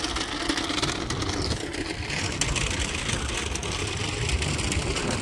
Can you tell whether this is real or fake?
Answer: real